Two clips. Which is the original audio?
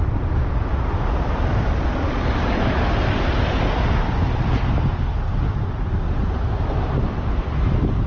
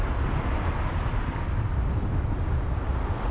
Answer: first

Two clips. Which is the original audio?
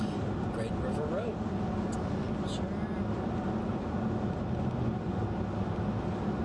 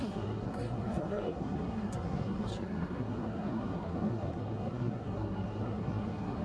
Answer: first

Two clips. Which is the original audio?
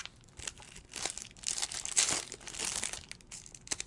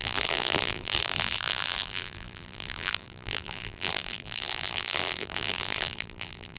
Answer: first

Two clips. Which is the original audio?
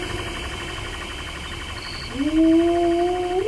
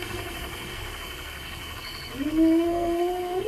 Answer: first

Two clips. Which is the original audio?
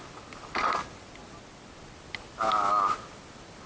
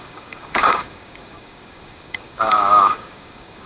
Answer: first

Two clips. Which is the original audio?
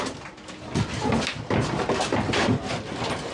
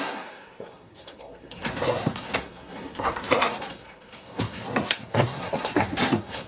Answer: first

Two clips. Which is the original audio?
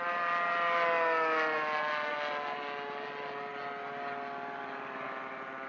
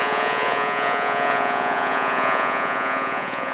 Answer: first